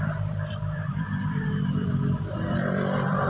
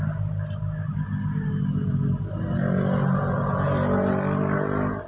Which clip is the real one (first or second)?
second